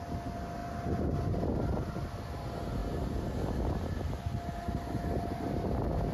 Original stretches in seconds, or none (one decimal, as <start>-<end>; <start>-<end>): 0.0-6.1

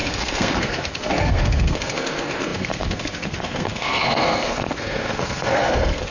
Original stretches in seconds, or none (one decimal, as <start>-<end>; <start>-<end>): none

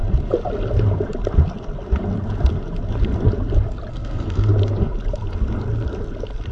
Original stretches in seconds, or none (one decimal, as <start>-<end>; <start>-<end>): 0.0-3.9; 4.5-6.5

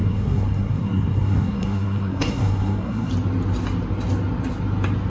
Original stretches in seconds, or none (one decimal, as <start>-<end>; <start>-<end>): 3.1-5.1

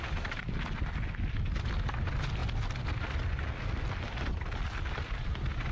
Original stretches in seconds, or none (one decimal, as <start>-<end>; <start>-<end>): 0.0-5.7